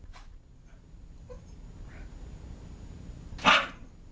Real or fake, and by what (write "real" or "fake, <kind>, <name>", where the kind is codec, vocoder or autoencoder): real